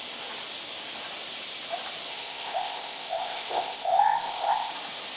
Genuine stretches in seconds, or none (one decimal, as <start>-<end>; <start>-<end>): 0.0-2.1; 4.7-5.2